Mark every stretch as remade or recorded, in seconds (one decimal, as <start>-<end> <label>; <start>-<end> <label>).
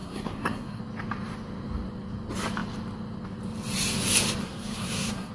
0.0-0.8 remade; 0.8-4.4 recorded; 4.4-5.3 remade